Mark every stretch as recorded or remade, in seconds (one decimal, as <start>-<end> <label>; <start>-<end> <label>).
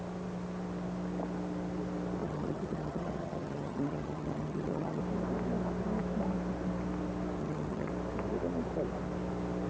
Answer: 0.0-2.2 recorded; 2.2-5.0 remade; 5.0-7.4 recorded; 7.4-7.9 remade; 7.9-9.7 recorded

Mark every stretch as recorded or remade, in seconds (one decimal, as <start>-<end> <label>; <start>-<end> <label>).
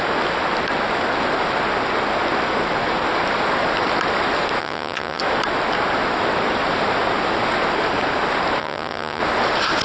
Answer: 0.0-4.6 recorded; 4.6-5.2 remade; 5.2-8.6 recorded; 8.6-9.2 remade; 9.2-9.8 recorded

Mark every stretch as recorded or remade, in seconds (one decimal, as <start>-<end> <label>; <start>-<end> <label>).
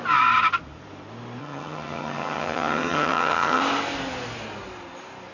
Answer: 0.0-1.4 recorded; 1.4-3.6 remade; 3.6-5.3 recorded